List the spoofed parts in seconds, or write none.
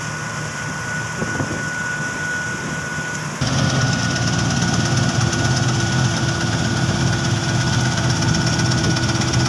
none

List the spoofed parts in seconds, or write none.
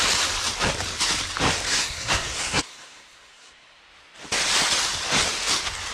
1.7-3.8 (codec, SNAC)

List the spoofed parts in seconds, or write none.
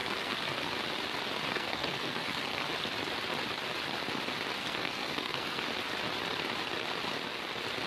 0.0-0.7 (codec, SNAC); 1.5-2.6; 4.6-5.6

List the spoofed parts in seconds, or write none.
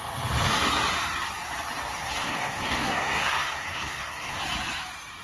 2.0-4.4 (codec, SNAC)